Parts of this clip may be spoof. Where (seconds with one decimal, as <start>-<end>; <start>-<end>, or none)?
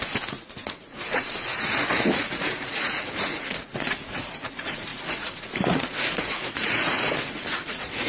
0.0-8.1